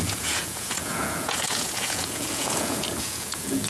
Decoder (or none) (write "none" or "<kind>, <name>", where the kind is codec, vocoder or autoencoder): vocoder, Vocos